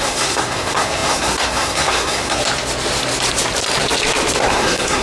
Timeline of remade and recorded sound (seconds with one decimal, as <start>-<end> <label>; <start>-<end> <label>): 0.0-2.4 remade; 2.4-4.5 recorded; 4.5-5.0 remade